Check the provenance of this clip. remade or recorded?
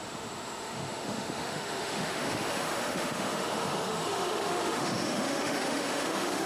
remade